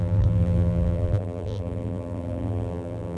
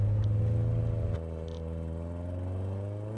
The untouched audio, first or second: second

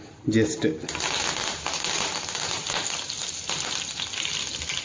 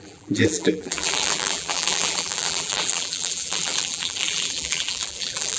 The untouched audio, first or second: first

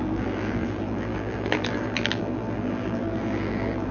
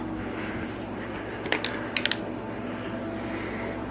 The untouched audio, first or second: second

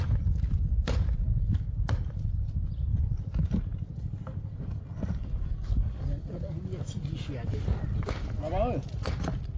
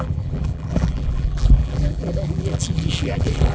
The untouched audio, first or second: first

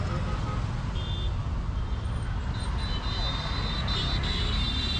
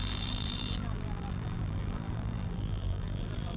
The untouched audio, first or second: first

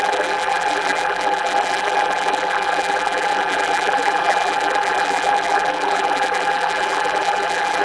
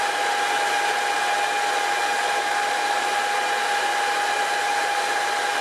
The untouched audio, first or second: second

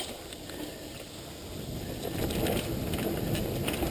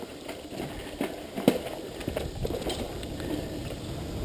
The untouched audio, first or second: first